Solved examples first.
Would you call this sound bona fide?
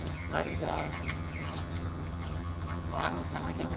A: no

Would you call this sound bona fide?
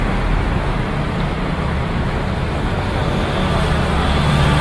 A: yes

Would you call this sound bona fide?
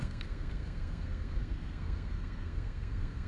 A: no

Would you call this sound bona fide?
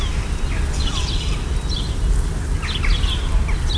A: yes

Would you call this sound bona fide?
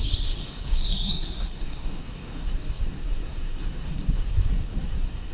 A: no